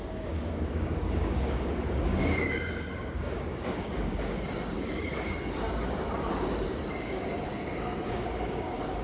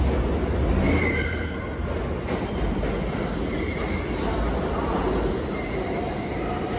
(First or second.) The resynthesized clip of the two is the first